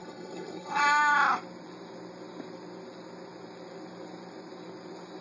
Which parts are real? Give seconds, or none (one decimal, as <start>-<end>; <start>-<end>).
0.8-5.2